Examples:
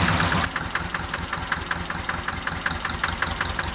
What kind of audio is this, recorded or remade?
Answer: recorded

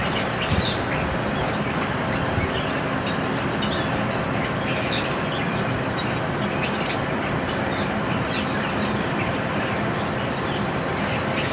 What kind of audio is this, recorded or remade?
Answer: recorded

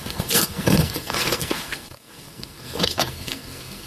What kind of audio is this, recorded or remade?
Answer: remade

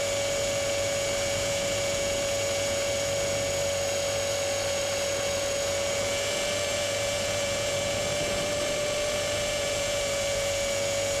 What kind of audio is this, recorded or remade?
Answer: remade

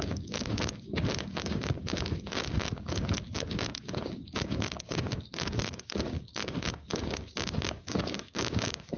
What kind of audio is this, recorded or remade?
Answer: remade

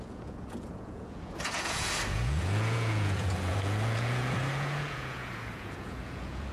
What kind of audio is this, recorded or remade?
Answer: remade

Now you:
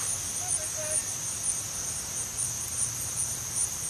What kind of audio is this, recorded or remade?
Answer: remade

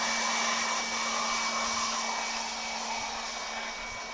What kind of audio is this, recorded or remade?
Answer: recorded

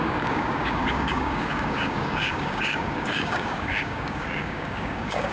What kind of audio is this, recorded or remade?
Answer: remade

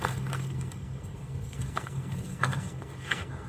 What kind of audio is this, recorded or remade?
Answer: remade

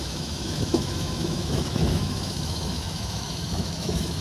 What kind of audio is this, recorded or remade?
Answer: remade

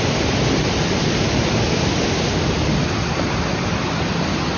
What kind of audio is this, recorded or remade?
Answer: recorded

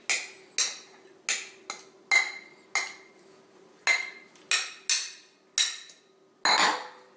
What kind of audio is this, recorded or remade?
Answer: recorded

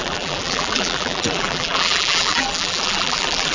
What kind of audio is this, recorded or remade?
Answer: remade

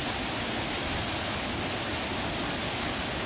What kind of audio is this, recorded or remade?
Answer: recorded